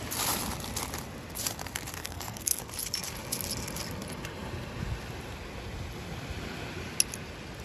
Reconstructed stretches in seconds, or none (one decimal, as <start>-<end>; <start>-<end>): 2.0-2.6